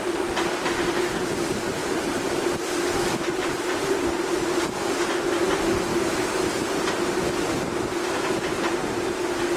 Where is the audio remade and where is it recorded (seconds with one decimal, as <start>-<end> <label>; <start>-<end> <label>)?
0.0-1.8 recorded; 1.8-5.1 remade; 5.1-9.6 recorded